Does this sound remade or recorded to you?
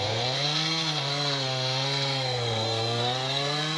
remade